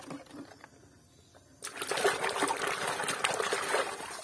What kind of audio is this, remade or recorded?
recorded